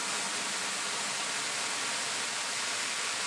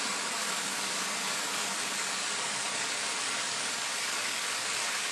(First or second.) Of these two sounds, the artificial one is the second